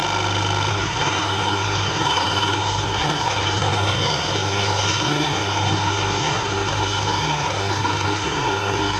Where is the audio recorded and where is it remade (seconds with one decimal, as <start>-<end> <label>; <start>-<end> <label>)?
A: 0.0-0.7 recorded; 0.7-9.0 remade